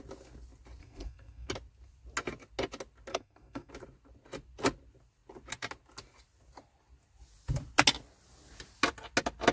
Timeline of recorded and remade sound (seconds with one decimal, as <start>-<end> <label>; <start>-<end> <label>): 0.0-0.8 recorded; 0.8-1.5 remade; 1.5-3.1 recorded; 3.1-3.7 remade; 3.7-9.5 recorded

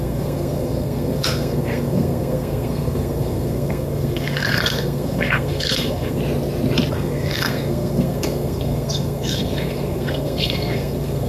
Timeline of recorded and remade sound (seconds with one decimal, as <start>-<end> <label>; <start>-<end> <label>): 0.0-6.2 remade; 6.2-6.9 recorded; 6.9-11.3 remade

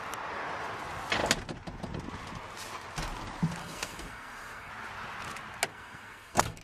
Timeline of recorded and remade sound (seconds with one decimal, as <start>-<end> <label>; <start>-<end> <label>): 0.0-3.6 recorded; 3.6-4.7 remade; 4.7-5.7 recorded; 5.7-6.6 remade

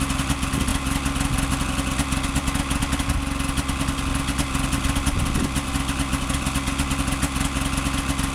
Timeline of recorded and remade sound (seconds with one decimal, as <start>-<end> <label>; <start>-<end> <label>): 0.0-8.3 recorded

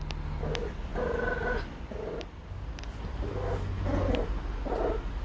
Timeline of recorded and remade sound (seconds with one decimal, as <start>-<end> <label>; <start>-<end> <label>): 0.0-5.2 recorded